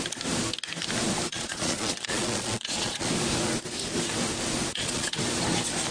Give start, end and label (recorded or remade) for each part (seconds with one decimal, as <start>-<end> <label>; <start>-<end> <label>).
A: 0.0-1.3 recorded; 1.3-3.1 remade; 3.1-4.7 recorded; 4.7-5.2 remade; 5.2-5.9 recorded